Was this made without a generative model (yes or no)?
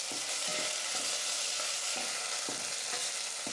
yes